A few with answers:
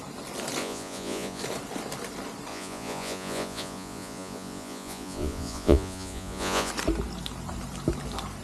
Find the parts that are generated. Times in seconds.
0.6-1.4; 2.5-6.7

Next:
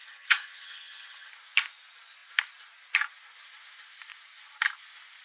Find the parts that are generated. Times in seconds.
0.0-1.3

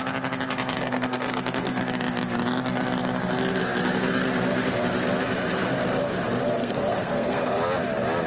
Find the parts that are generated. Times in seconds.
0.8-1.8; 6.6-7.4

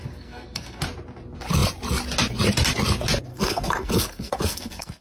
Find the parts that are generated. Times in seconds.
0.0-0.8; 3.3-5.0

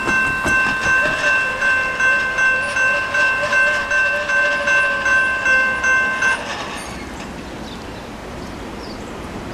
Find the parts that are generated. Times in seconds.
8.2-9.5